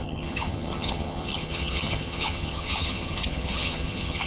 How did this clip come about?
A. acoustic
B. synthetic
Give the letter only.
B